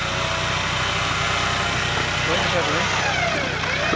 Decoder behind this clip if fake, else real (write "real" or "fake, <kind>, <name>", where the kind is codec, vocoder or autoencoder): real